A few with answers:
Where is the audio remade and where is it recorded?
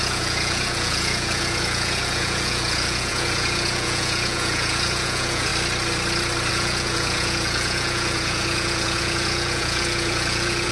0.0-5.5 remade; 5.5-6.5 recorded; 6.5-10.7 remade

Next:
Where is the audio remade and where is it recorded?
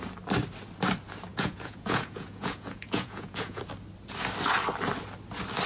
0.0-1.3 recorded; 1.3-3.6 remade; 3.6-5.7 recorded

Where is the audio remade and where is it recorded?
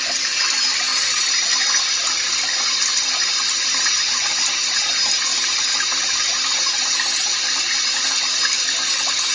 0.0-9.3 recorded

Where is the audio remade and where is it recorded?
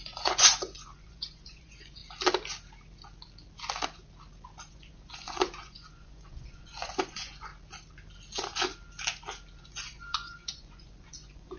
0.0-2.0 remade; 2.0-4.7 recorded; 4.7-7.5 remade; 7.5-9.6 recorded; 9.6-11.6 remade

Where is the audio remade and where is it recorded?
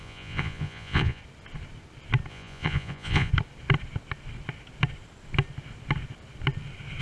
0.0-1.2 remade; 1.2-2.3 recorded; 2.3-3.3 remade; 3.3-7.0 recorded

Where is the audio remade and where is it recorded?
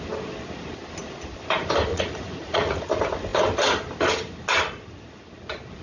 0.0-1.9 recorded; 1.9-2.8 remade; 2.8-5.8 recorded